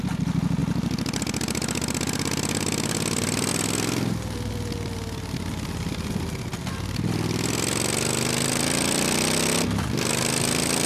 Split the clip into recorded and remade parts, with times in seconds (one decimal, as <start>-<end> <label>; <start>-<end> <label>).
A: 0.0-10.9 recorded